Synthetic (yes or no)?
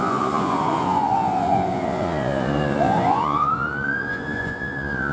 yes